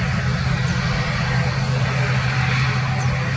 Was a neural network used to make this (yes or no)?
no